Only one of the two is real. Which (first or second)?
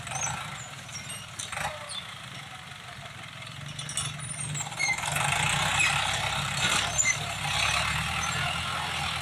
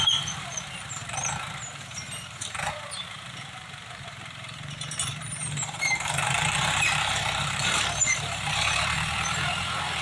first